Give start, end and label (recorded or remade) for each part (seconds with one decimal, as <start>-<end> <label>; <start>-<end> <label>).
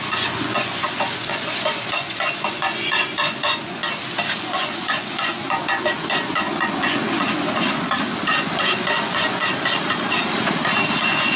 0.0-3.8 remade; 3.8-4.4 recorded; 4.4-9.4 remade; 9.4-11.0 recorded; 11.0-11.4 remade